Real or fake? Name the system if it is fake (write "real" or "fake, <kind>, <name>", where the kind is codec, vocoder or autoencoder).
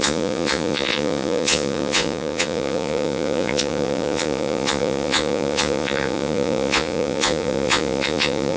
fake, vocoder, Vocos